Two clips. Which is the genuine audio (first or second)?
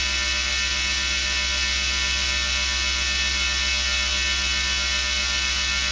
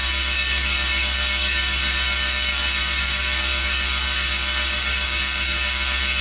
first